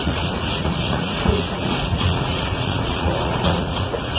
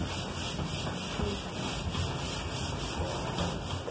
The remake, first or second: first